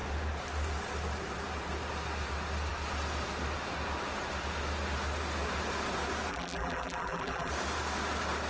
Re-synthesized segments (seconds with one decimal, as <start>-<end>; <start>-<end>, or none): 6.3-7.5

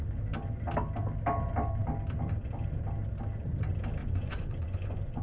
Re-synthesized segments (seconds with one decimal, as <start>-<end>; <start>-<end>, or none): 4.0-5.2

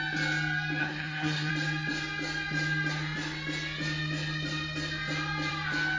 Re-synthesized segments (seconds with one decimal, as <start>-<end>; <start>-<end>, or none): 0.8-1.5

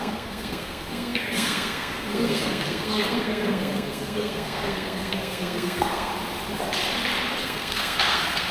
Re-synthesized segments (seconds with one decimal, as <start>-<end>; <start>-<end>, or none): 0.0-6.1; 7.4-8.5

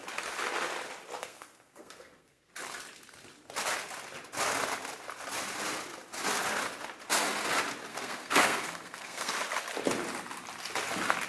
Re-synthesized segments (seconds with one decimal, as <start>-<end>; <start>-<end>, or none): 1.2-2.5; 7.9-9.3

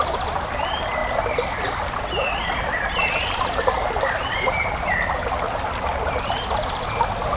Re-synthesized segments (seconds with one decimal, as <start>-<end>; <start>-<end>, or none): none